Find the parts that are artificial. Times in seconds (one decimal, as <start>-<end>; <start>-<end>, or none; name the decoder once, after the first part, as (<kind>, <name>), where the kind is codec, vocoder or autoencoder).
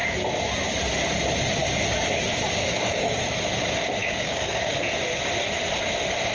2.6-3.2 (codec, DAC); 4.0-4.8